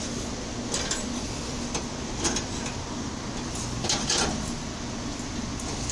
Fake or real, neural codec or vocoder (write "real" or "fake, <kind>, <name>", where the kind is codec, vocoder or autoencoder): real